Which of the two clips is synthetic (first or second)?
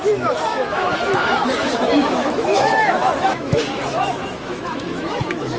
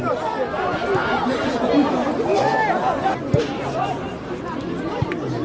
first